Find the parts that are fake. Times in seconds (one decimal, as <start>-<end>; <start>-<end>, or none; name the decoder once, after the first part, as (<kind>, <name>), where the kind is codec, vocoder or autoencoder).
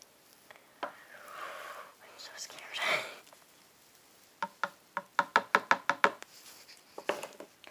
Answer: none